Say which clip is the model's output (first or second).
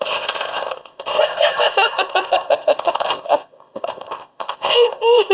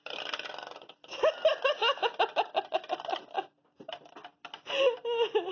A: first